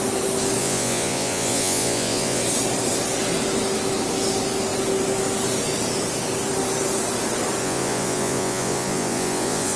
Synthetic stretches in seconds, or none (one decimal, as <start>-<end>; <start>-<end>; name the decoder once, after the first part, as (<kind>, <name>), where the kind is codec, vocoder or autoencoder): 0.6-2.4 (vocoder, Vocos); 7.6-9.8